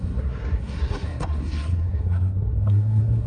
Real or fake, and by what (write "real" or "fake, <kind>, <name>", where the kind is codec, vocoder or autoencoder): fake, codec, SNAC